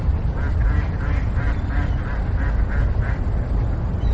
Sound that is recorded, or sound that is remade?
recorded